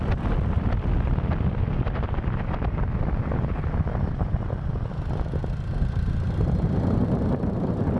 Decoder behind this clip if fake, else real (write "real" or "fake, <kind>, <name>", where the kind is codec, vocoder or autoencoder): real